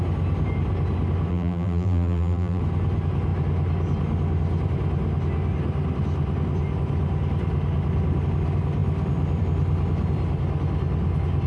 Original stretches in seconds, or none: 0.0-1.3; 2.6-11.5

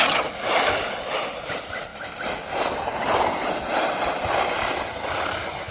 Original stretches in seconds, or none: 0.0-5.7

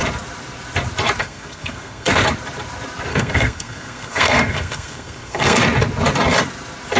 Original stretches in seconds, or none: 0.0-1.2; 2.1-3.1; 5.6-7.0

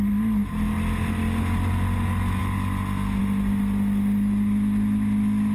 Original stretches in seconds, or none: 0.0-5.5

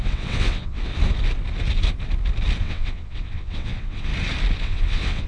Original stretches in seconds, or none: 0.9-2.6; 4.1-4.6

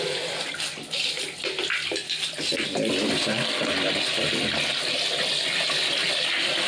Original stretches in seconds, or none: 0.0-6.7

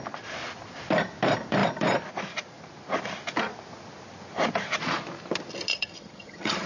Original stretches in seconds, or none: 0.0-5.7